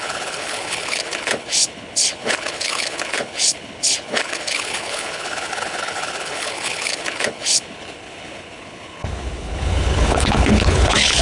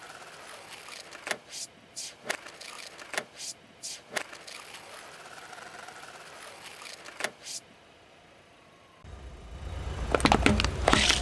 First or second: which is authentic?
second